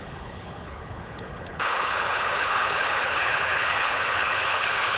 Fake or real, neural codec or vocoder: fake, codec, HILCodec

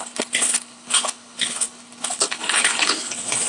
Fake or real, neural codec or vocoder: fake, codec, HILCodec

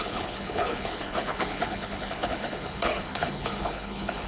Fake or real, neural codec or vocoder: fake, codec, HILCodec